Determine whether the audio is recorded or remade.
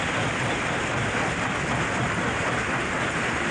recorded